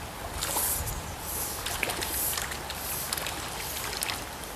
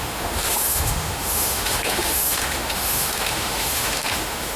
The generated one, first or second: second